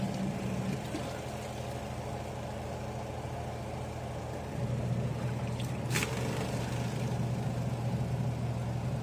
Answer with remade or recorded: recorded